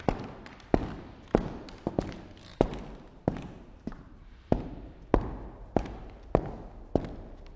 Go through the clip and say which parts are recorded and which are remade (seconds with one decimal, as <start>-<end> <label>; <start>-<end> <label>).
0.0-1.4 recorded; 1.4-6.0 remade; 6.0-7.6 recorded